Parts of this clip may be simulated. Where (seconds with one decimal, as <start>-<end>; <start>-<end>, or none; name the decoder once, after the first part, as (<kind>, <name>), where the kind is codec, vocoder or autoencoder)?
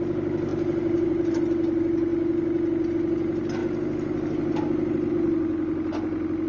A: 0.5-1.4 (vocoder, BigVGAN v2)